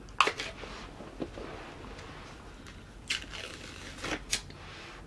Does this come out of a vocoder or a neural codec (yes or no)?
no